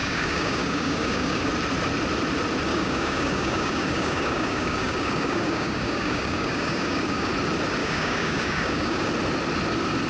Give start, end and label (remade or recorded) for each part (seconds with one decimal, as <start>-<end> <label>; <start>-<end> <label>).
0.0-1.5 remade; 1.5-2.7 recorded; 2.7-7.3 remade; 7.3-7.8 recorded; 7.8-9.1 remade; 9.1-10.1 recorded